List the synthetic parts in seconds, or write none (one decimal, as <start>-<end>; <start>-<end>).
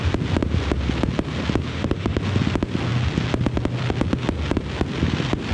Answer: 1.7-2.2